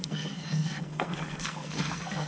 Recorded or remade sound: remade